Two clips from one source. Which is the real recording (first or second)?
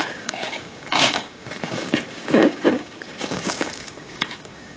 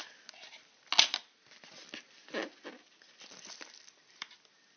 second